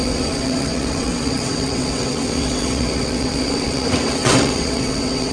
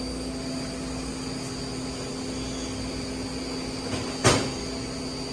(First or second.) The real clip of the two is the second